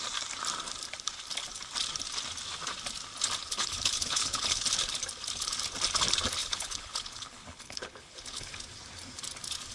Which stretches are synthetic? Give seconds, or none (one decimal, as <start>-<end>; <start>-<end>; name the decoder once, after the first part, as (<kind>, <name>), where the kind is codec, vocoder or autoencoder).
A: 3.4-4.6 (codec, HILCodec); 6.4-8.6